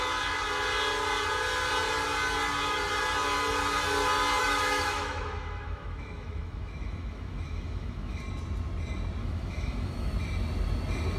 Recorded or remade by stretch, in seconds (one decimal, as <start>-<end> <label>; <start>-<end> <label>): 0.0-4.4 recorded; 4.4-8.2 remade; 8.2-9.2 recorded; 9.2-10.1 remade; 10.1-11.2 recorded